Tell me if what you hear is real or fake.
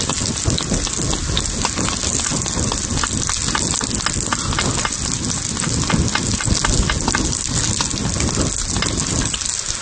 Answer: real